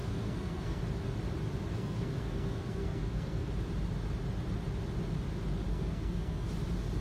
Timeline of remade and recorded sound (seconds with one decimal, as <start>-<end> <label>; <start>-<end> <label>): 0.0-0.8 remade; 0.8-1.7 recorded; 1.7-3.5 remade; 3.5-5.7 recorded; 5.7-6.5 remade; 6.5-7.0 recorded